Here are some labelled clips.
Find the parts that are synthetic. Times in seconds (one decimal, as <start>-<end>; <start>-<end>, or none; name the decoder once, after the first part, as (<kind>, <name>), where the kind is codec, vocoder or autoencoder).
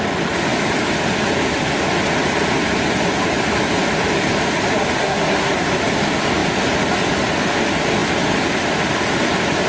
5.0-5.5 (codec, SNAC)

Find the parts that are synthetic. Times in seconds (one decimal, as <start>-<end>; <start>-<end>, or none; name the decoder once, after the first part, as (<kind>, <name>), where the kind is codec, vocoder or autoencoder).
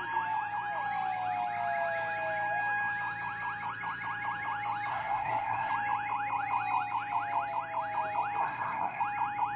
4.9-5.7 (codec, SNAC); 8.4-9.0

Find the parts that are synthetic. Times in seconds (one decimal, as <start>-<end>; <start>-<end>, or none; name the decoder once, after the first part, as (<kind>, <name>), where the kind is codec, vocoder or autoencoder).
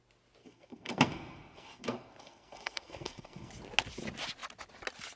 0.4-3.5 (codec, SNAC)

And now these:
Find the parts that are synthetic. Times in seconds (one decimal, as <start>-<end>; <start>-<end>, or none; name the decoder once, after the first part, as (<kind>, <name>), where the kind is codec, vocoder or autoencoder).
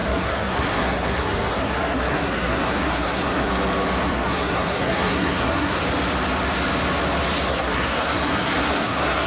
0.0-3.5 (codec, SNAC); 4.1-5.8; 7.5-9.3